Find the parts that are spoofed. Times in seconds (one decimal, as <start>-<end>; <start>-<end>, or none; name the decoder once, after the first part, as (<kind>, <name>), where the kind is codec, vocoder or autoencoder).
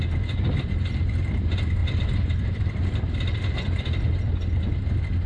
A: none